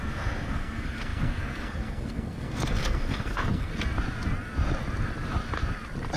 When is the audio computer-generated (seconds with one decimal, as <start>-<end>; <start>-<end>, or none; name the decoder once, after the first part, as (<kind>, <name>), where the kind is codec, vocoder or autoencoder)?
0.0-3.7 (codec, SNAC)